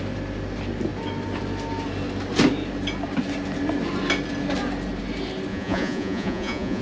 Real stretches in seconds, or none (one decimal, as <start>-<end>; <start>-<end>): 0.0-5.5